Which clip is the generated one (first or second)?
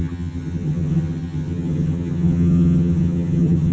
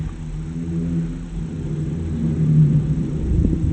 first